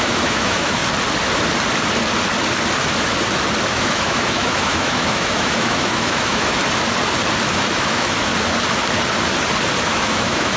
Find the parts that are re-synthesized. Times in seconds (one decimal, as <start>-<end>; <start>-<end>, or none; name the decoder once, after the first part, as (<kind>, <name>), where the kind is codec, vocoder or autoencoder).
0.0-0.8 (autoencoder, DAC-VAE); 3.7-6.6; 7.5-8.3; 9.8-10.6